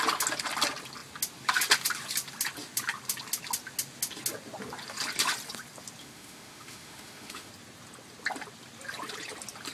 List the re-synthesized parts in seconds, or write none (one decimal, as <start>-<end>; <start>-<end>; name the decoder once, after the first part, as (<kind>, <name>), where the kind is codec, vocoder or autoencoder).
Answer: 6.0-7.5 (autoencoder, DAC-VAE)